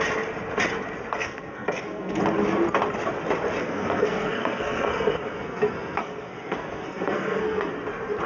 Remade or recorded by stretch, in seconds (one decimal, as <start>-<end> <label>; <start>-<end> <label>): 0.0-1.1 recorded; 1.1-2.2 remade; 2.2-3.6 recorded; 3.6-7.7 remade; 7.7-8.3 recorded